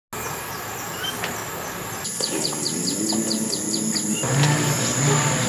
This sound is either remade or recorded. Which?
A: recorded